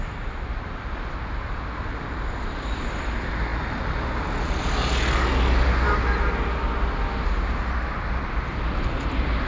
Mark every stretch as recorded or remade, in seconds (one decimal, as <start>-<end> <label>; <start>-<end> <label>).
0.0-9.5 recorded